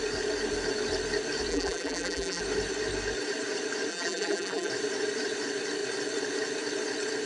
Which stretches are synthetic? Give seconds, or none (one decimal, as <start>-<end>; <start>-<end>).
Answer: 1.5-2.4; 3.9-4.7